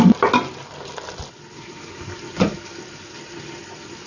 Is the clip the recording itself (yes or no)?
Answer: yes